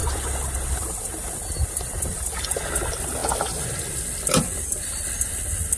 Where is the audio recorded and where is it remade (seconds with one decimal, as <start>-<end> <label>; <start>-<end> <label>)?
0.0-2.6 remade; 2.6-5.8 recorded

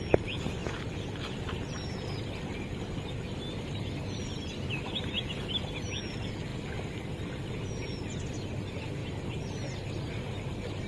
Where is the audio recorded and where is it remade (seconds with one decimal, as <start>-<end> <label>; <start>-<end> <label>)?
0.0-6.5 recorded; 6.5-7.7 remade; 7.7-10.9 recorded

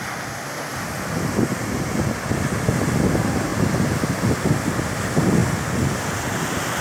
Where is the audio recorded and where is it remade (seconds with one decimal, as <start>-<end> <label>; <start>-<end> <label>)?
0.0-6.8 recorded

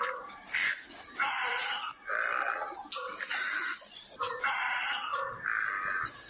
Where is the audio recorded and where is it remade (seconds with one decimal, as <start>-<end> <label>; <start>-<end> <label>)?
0.0-6.3 remade

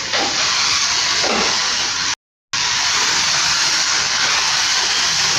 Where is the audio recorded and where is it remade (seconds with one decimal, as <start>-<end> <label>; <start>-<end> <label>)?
0.0-5.4 recorded

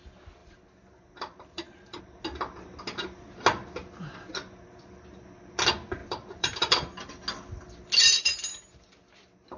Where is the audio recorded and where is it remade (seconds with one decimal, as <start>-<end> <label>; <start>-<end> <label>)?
0.0-0.4 recorded; 0.4-2.0 remade; 2.0-6.0 recorded; 6.0-7.1 remade; 7.1-9.6 recorded

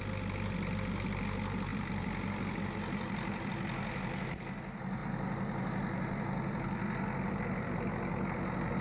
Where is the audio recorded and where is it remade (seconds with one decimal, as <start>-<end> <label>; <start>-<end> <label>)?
0.0-1.7 recorded; 1.7-3.5 remade; 3.5-8.8 recorded

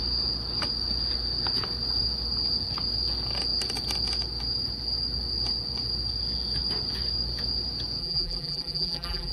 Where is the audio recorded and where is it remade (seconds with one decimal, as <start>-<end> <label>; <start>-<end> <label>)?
0.0-8.0 recorded; 8.0-9.3 remade